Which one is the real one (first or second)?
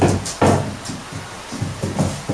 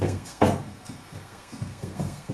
first